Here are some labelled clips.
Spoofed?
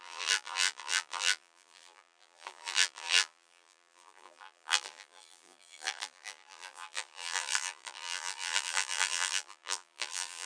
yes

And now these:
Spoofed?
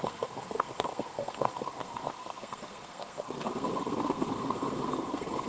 yes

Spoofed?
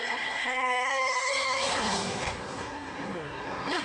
yes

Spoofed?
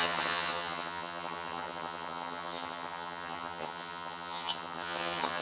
yes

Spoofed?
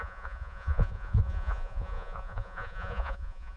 yes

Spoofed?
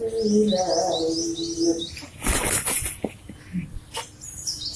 no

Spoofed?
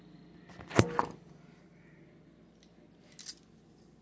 no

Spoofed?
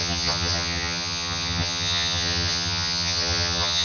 yes